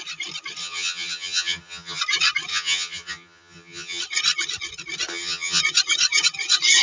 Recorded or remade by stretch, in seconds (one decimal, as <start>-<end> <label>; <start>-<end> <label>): 0.0-0.6 recorded; 0.6-2.0 remade; 2.0-2.5 recorded; 2.5-4.0 remade; 4.0-5.1 recorded; 5.1-5.6 remade; 5.6-6.8 recorded